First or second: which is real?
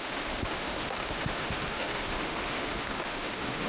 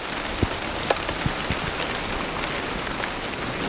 second